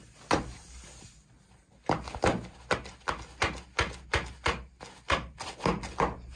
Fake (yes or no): no